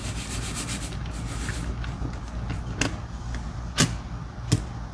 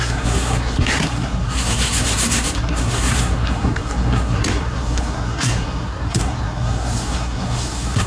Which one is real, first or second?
first